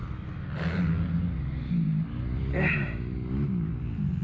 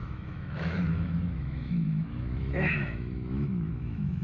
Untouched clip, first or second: first